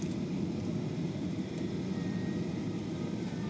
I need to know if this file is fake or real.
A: real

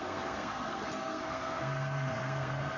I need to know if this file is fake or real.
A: fake